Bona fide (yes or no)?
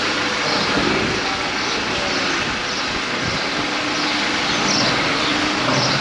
yes